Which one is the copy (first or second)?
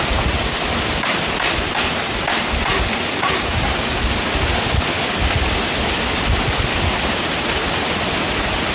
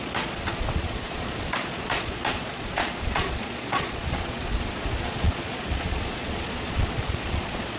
second